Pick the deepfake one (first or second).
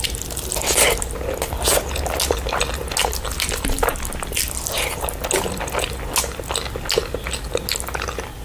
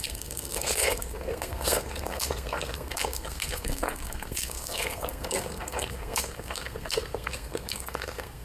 second